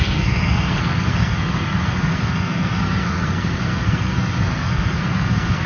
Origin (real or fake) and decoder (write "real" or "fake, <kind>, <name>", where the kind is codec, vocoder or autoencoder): fake, codec, SNAC